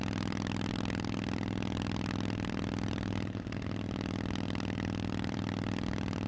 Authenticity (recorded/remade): remade